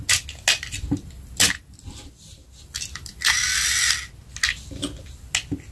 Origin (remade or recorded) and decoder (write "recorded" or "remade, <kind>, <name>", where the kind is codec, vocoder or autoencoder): recorded